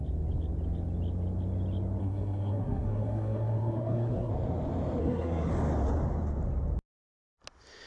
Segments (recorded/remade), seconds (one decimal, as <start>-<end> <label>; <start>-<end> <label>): 0.0-2.0 recorded; 2.0-4.3 remade; 4.3-5.0 recorded; 5.0-5.5 remade; 5.5-7.9 recorded